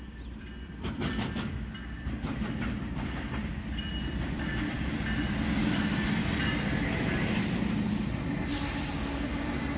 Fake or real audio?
real